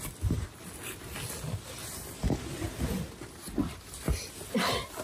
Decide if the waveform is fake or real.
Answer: real